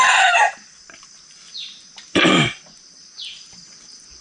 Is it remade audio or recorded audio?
remade